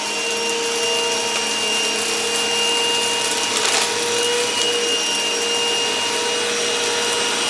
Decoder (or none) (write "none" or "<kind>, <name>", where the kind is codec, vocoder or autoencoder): none